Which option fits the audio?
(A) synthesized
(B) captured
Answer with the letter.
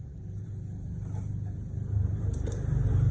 B